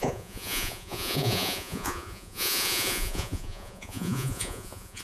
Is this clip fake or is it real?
fake